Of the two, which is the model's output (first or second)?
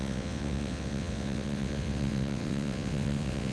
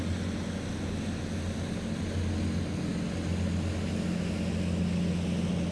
first